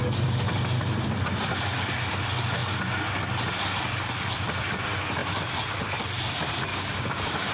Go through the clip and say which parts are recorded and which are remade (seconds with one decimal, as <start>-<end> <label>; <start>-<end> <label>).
0.0-6.7 recorded; 6.7-7.5 remade